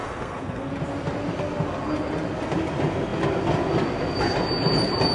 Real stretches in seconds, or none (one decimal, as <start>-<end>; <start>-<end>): 0.7-5.1